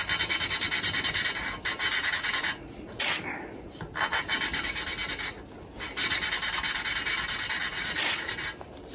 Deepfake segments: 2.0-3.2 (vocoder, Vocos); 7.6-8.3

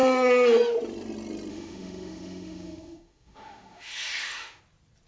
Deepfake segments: 1.5-4.6 (autoencoder, DAC-VAE)

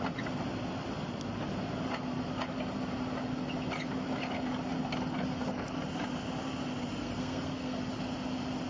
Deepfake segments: 7.0-7.8 (codec, SNAC)

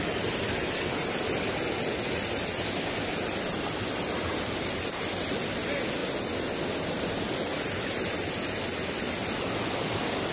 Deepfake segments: none